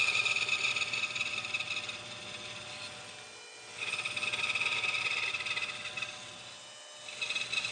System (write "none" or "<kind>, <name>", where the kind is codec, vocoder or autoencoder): none